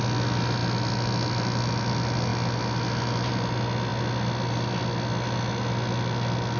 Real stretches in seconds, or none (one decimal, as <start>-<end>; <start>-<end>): 0.0-6.6